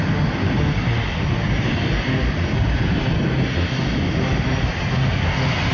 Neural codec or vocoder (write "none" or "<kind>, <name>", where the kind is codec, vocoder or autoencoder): none